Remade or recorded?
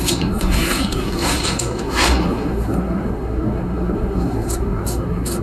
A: remade